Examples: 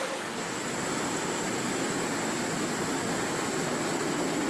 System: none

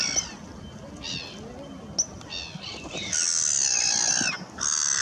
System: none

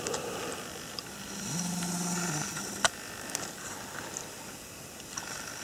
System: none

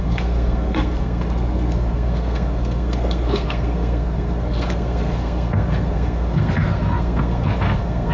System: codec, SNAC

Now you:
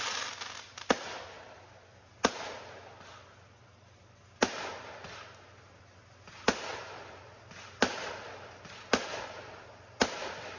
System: none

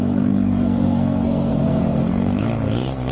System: codec, SNAC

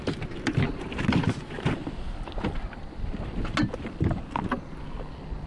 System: none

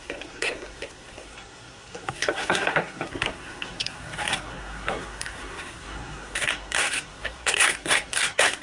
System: codec, SNAC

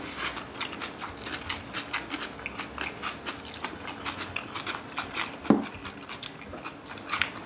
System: none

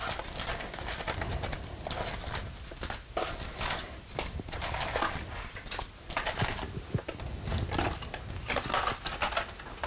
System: none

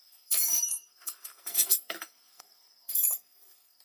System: codec, SNAC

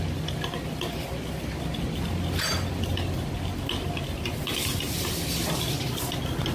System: none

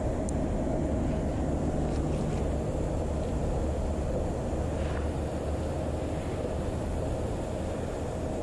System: none